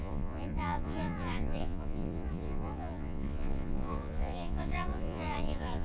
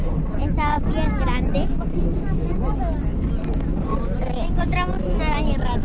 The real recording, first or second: second